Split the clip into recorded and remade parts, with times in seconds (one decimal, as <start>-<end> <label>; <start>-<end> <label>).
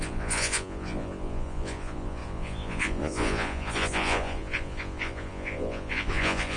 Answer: 0.0-6.6 remade